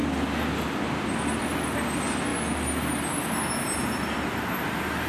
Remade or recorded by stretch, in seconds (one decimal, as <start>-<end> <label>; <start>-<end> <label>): 0.0-5.1 recorded